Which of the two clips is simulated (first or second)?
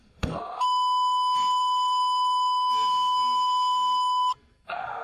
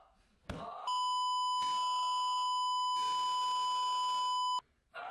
first